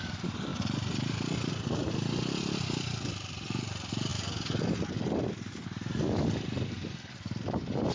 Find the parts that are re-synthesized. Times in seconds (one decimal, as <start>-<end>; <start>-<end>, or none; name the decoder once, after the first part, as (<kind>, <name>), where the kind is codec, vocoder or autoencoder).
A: none

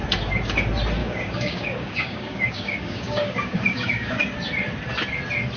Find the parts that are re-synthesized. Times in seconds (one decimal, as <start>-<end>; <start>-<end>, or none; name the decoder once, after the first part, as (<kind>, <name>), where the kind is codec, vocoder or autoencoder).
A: 1.0-4.2 (codec, DAC)

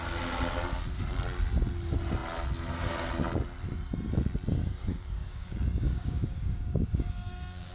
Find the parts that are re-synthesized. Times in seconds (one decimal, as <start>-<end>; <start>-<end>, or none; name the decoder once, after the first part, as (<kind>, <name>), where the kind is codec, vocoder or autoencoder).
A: 4.6-7.7 (codec, DAC)

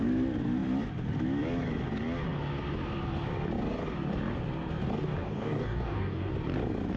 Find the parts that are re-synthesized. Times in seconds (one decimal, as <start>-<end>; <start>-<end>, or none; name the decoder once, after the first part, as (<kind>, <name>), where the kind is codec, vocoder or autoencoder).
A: 5.2-6.3 (codec, DAC)

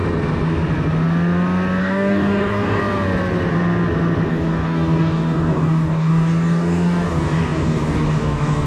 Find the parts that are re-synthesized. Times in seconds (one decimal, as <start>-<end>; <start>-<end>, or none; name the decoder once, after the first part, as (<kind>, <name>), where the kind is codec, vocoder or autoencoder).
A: 1.8-2.8 (codec, DAC); 4.3-8.7